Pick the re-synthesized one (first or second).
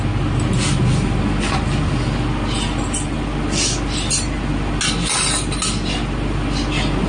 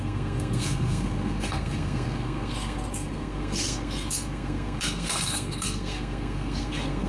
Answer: second